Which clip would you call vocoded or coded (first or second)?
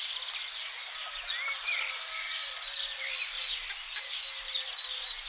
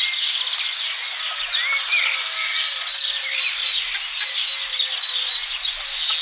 first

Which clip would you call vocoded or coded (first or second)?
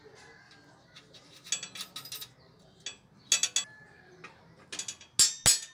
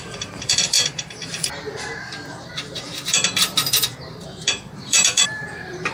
second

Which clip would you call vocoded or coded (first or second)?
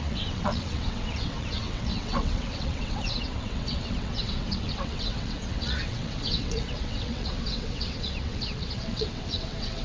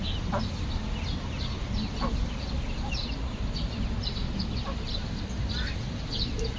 first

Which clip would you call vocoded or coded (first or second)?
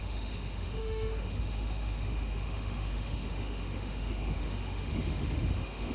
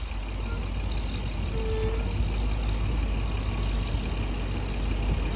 first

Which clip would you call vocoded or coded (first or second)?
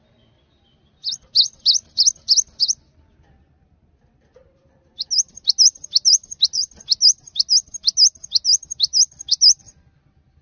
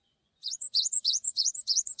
second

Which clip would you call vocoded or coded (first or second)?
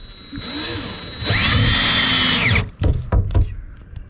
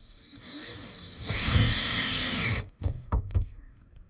second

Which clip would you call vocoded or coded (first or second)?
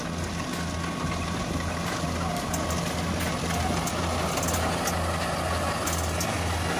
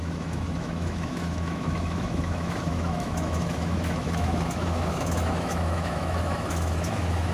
second